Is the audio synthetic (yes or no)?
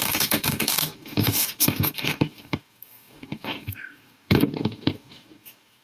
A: yes